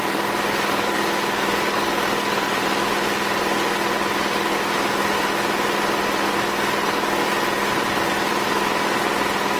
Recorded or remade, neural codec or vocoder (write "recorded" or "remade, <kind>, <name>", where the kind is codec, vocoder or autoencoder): recorded